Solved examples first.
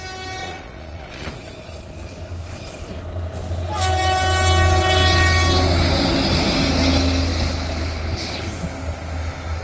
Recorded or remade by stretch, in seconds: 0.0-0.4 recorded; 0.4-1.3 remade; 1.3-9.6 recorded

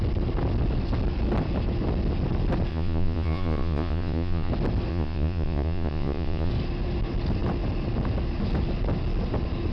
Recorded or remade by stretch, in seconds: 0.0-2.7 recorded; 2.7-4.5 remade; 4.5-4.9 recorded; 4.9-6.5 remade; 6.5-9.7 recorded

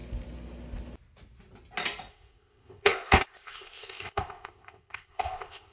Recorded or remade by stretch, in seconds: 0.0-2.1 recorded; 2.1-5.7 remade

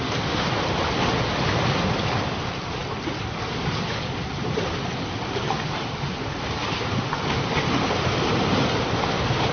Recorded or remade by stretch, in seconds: 0.0-9.5 recorded